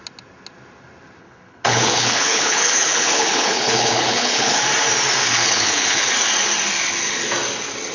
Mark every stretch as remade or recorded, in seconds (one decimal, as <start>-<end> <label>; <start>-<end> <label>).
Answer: 0.0-1.2 recorded; 1.2-4.6 remade; 4.6-5.2 recorded; 5.2-6.1 remade; 6.1-7.9 recorded